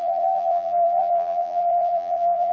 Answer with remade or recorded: remade